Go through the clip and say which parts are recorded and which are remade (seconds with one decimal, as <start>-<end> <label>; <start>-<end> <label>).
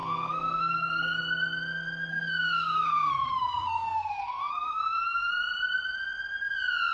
0.0-1.2 remade; 1.2-2.1 recorded; 2.1-5.3 remade; 5.3-6.9 recorded